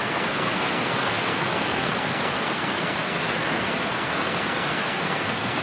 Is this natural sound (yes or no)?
no